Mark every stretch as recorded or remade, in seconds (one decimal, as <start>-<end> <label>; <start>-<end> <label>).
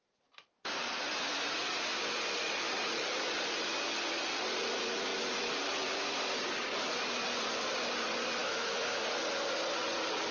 0.0-8.4 recorded; 8.4-9.0 remade; 9.0-10.3 recorded